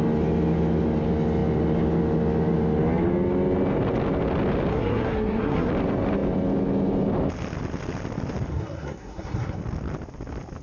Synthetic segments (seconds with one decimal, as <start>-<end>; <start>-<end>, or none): 4.7-5.7; 8.5-9.6